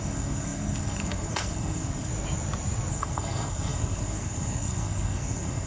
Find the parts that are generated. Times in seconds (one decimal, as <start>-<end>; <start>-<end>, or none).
0.0-2.1; 2.9-5.7